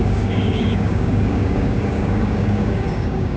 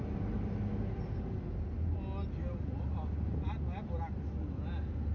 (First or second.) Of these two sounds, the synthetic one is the first